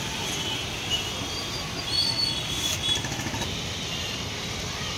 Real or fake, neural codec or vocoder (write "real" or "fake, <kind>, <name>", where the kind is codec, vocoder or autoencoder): real